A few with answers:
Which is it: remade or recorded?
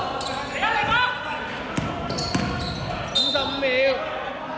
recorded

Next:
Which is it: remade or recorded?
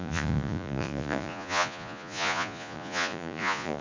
remade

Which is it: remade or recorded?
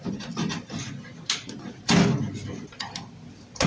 recorded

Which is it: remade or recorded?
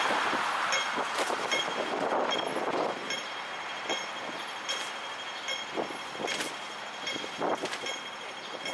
recorded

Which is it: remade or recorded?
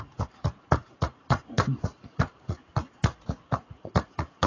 remade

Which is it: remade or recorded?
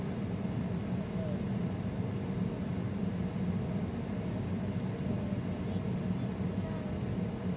recorded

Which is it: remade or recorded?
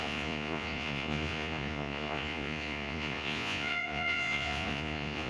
remade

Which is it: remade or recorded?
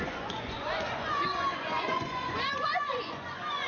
remade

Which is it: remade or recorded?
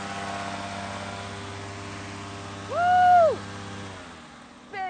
recorded